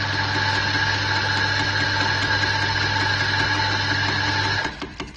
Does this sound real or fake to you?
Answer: real